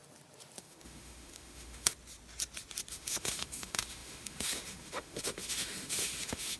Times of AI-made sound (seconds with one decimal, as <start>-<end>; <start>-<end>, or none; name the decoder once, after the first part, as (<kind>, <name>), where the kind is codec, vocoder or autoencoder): 0.6-1.9 (autoencoder, DAC-VAE); 2.9-6.6